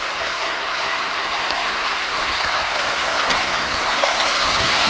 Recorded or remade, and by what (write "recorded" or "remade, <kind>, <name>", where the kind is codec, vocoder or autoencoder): remade, codec, SNAC